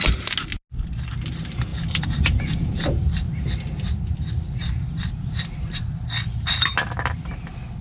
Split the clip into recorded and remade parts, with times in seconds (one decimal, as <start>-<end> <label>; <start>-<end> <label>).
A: 0.0-7.8 recorded